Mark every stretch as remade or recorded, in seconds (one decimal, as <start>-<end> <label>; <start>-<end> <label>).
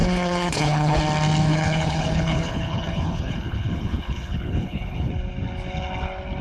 0.0-1.0 remade; 1.0-1.5 recorded; 1.5-5.1 remade; 5.1-6.4 recorded